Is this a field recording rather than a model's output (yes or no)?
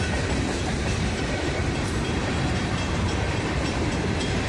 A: no